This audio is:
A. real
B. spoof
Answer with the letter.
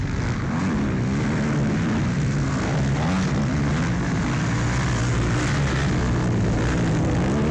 A